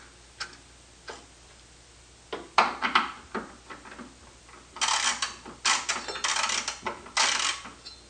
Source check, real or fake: real